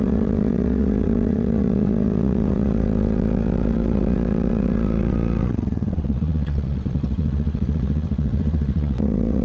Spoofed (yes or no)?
yes